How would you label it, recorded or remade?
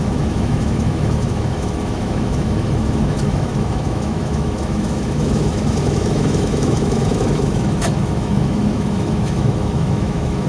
remade